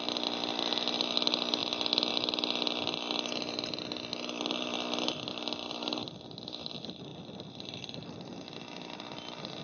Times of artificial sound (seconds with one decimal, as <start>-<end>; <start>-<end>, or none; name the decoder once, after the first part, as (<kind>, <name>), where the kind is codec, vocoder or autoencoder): none